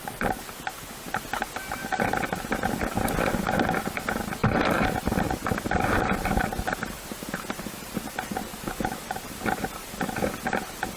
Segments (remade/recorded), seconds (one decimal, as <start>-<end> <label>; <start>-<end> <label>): 0.0-1.8 recorded; 1.8-2.9 remade; 2.9-4.4 recorded; 4.4-7.2 remade; 7.2-11.0 recorded